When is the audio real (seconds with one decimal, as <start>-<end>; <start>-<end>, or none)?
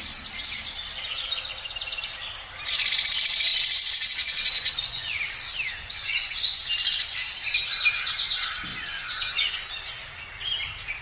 0.0-3.5; 5.2-5.7; 6.7-8.7; 9.7-11.0